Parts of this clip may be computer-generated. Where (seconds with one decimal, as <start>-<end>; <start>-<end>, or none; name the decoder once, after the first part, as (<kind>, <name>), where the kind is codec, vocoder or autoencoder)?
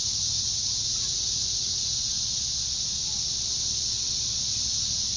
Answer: 0.0-2.1 (vocoder, Vocos)